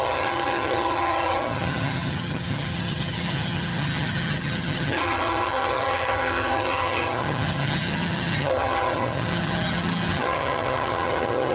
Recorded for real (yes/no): no